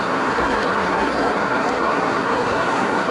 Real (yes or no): no